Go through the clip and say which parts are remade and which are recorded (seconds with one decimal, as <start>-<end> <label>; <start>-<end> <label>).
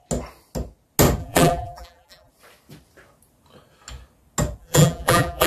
0.0-1.2 recorded; 1.2-2.3 remade; 2.3-4.6 recorded; 4.6-5.5 remade